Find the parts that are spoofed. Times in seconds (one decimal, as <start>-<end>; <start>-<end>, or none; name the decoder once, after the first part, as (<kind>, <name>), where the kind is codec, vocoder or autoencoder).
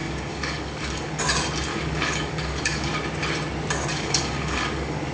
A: 0.0-1.2 (codec, DAC); 1.7-3.0; 3.9-5.1